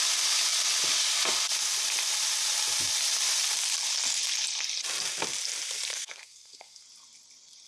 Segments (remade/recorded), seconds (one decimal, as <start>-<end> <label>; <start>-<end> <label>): 0.0-5.9 recorded; 5.9-6.8 remade; 6.8-7.7 recorded